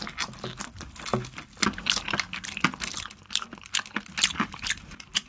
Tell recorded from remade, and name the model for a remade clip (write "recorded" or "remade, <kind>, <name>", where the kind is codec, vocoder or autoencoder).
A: recorded